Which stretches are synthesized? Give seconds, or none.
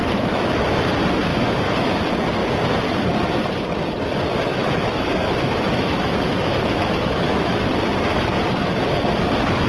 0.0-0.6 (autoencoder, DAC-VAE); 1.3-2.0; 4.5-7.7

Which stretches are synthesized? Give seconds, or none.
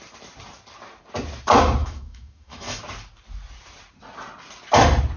1.8-2.8 (autoencoder, DAC-VAE)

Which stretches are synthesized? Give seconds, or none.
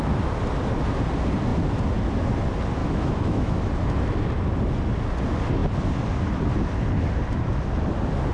2.8-3.7 (autoencoder, DAC-VAE)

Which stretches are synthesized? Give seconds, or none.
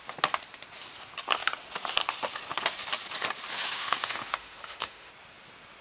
3.5-5.1 (autoencoder, DAC-VAE)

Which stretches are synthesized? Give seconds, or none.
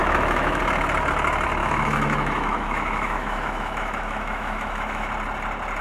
0.0-0.6 (autoencoder, DAC-VAE); 1.6-5.1